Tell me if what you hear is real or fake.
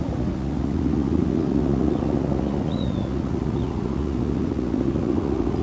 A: fake